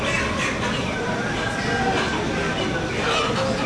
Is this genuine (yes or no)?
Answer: yes